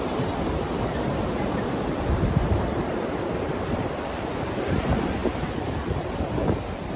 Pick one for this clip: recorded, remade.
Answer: remade